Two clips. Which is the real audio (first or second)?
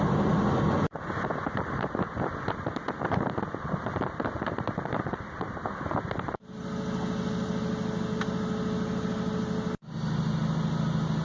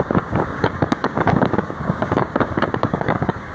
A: first